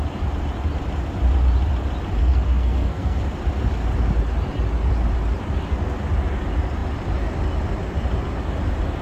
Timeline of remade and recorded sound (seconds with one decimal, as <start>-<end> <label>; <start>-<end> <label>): 0.0-2.2 recorded; 2.2-3.2 remade; 3.2-9.0 recorded